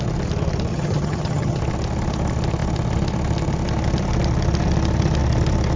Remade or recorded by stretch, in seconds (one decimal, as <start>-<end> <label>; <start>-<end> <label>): 0.0-0.7 recorded; 0.7-1.6 remade; 1.6-5.8 recorded